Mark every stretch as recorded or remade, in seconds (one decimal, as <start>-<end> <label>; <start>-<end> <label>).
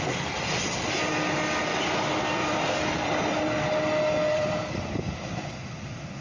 0.0-2.4 recorded; 2.4-3.2 remade; 3.2-4.3 recorded; 4.3-5.5 remade; 5.5-6.2 recorded